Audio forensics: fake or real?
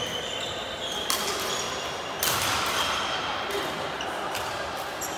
real